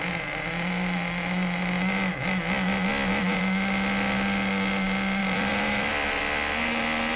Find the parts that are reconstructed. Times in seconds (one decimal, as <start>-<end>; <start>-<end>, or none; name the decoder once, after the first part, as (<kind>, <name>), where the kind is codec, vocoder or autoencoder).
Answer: 2.9-3.4 (vocoder, BigVGAN v2); 5.2-6.2